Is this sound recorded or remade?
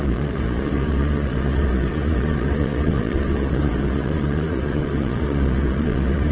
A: remade